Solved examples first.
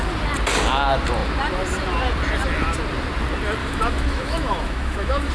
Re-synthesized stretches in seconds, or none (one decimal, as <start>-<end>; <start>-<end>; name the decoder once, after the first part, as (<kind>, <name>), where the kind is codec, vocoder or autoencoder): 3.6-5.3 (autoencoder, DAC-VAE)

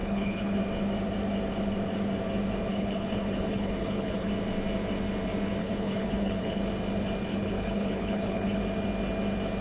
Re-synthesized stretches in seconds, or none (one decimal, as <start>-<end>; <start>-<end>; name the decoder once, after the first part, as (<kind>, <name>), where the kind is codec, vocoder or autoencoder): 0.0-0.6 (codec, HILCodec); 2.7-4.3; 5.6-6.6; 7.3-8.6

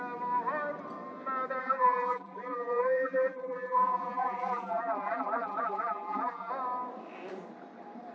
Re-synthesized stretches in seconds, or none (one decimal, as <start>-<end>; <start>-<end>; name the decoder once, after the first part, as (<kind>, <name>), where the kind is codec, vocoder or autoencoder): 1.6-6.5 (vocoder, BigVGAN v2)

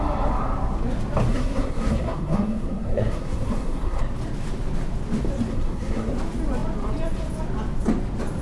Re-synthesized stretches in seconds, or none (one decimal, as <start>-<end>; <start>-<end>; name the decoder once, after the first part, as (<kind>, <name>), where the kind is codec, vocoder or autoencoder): 1.3-4.0 (codec, SNAC); 5.5-6.1

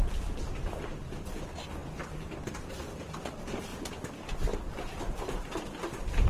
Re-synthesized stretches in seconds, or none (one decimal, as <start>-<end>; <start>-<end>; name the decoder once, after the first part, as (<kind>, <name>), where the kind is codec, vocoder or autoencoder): none

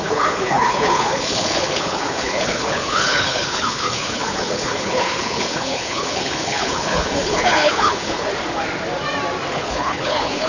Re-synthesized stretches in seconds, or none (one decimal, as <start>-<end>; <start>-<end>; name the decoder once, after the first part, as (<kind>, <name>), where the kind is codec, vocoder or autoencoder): 0.0-8.3 (codec, HILCodec); 9.5-10.5